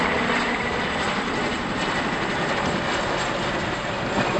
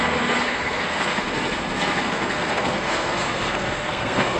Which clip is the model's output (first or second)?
second